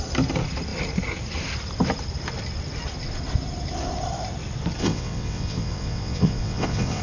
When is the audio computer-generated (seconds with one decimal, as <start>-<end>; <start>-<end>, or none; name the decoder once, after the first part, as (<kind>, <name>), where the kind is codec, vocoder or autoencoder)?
4.8-7.0 (vocoder, WaveNeXt)